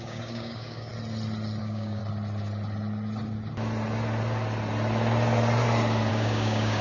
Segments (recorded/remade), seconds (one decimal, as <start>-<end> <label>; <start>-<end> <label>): 0.0-0.9 remade; 0.9-1.6 recorded; 1.6-2.0 remade; 2.0-6.1 recorded; 6.1-6.8 remade